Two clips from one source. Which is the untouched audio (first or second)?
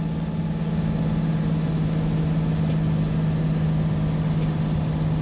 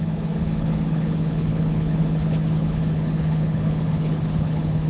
first